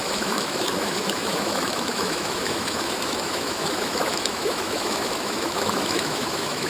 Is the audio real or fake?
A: fake